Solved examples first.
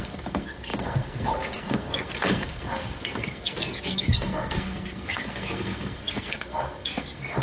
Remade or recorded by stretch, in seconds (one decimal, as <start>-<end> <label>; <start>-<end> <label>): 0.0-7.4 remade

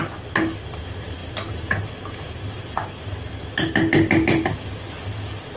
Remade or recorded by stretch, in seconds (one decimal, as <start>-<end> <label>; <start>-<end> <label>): 0.0-5.6 recorded

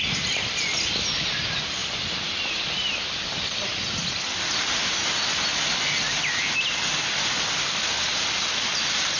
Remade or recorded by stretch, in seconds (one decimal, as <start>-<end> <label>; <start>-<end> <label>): 0.0-9.2 recorded

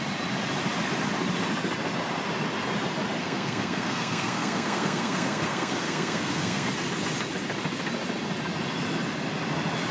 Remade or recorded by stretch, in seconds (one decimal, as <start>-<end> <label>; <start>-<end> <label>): 0.0-3.2 recorded; 3.2-6.7 remade; 6.7-9.9 recorded